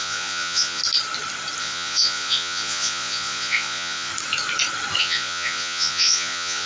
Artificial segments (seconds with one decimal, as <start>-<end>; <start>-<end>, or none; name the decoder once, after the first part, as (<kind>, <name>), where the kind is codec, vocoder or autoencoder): 0.0-0.8 (vocoder, Vocos); 1.6-4.1; 5.0-6.7